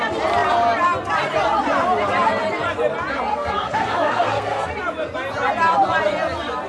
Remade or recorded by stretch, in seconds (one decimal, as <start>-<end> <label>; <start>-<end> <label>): 0.0-3.3 recorded; 3.3-4.7 remade; 4.7-6.7 recorded